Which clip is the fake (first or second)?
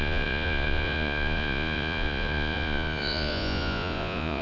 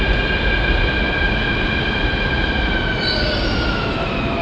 first